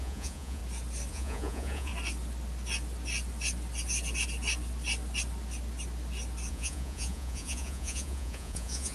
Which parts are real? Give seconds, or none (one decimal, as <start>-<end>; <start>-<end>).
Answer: 0.6-1.1; 1.9-6.5

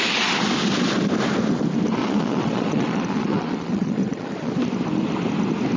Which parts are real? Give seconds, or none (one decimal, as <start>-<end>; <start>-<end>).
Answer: 0.0-2.0; 4.5-5.8

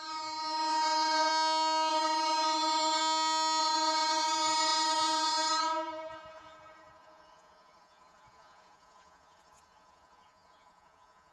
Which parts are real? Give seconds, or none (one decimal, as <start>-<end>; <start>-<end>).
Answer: 1.3-1.9; 3.0-3.6